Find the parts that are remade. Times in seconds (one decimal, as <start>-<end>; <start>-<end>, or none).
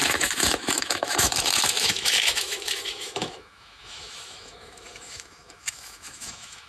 0.0-6.7